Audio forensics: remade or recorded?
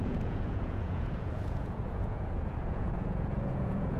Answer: remade